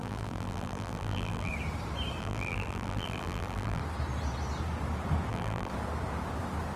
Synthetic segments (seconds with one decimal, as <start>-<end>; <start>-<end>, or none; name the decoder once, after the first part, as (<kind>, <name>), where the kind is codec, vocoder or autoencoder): 0.0-1.5 (vocoder, BigVGAN v2); 2.2-3.8; 5.3-5.7